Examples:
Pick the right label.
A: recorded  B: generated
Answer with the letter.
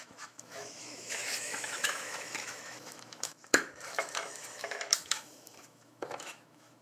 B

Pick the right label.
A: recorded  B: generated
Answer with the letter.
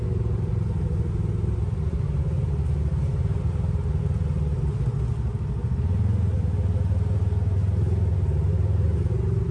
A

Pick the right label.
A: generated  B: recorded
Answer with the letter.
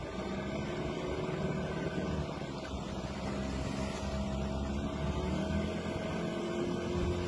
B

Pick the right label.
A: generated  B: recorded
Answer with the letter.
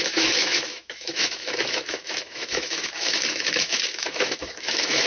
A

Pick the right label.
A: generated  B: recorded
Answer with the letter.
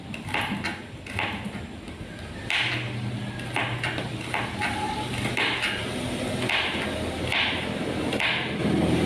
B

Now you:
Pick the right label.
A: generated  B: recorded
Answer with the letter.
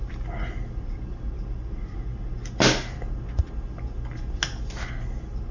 B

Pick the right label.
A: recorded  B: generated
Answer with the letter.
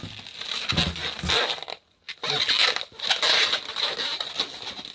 A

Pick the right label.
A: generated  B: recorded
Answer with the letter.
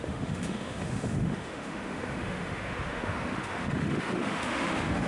A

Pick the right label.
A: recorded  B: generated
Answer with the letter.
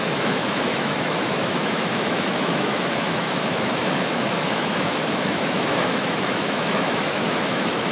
B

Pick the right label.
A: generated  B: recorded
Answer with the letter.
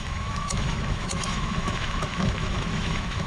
A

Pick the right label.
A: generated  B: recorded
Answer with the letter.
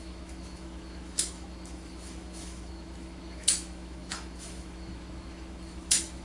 A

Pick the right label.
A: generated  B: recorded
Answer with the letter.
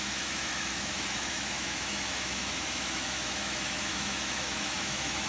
A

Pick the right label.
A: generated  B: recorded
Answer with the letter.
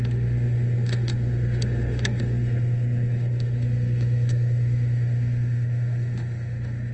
A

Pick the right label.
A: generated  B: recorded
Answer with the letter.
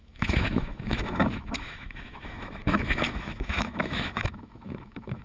A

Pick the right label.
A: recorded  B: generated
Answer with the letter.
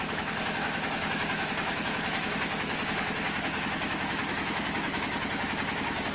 B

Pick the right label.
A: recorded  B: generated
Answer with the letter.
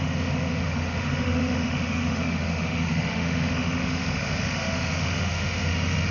B